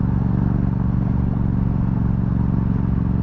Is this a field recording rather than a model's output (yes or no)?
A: yes